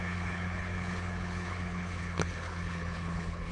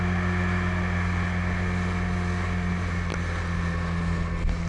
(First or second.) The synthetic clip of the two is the first